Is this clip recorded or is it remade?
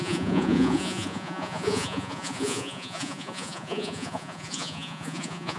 remade